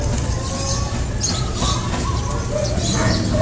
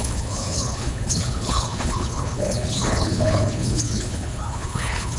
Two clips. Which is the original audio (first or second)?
first